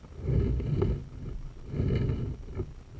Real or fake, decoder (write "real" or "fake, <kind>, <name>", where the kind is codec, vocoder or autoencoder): real